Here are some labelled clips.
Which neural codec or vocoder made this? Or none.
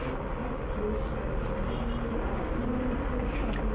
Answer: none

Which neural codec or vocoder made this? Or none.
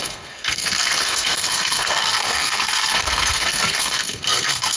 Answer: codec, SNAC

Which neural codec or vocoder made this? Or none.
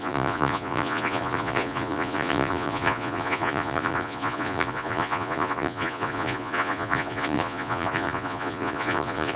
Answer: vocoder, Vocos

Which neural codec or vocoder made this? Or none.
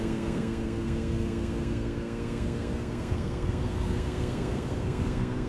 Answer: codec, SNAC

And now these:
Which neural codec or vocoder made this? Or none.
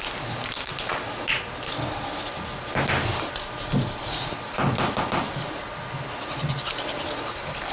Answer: none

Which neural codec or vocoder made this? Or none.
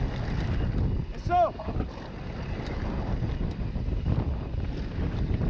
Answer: none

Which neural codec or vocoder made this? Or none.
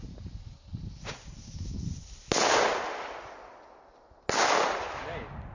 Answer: none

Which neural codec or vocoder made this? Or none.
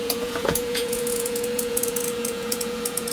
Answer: vocoder, Vocos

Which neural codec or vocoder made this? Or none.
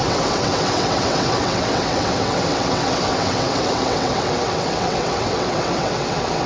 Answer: vocoder, WaveNeXt